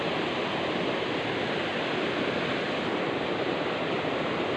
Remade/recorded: recorded